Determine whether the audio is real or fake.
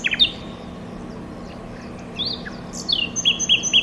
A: real